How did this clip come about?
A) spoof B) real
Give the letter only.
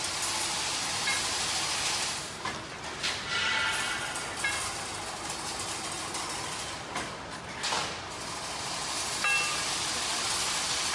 B